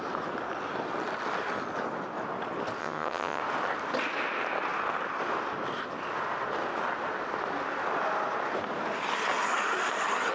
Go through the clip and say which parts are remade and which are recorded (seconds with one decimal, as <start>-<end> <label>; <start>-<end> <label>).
0.0-2.8 recorded; 2.8-3.4 remade; 3.4-10.3 recorded